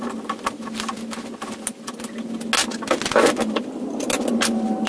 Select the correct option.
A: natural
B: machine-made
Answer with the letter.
A